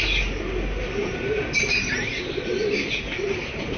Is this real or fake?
real